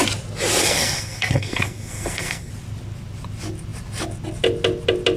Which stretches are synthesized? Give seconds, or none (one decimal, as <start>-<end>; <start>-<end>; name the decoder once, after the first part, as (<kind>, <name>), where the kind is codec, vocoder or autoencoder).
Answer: 0.6-2.5 (codec, SNAC)